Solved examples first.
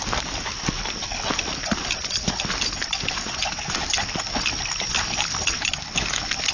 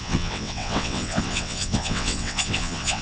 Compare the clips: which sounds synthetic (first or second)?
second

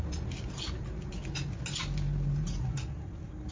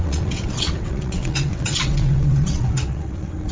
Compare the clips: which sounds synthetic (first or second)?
second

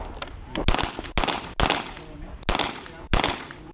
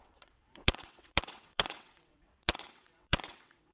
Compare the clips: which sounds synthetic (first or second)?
second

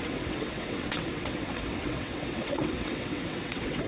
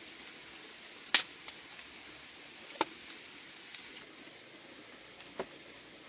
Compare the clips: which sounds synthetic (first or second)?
first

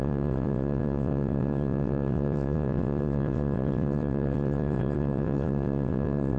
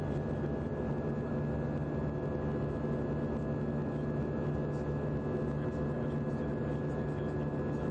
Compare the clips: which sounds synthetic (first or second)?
first